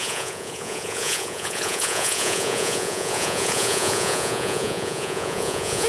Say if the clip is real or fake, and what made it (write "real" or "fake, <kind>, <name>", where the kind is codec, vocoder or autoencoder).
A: fake, vocoder, Vocos